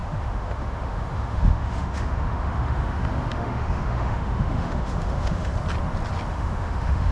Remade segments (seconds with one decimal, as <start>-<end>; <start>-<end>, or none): 0.0-5.5; 6.3-7.1